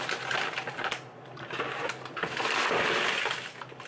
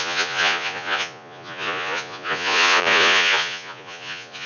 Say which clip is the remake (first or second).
second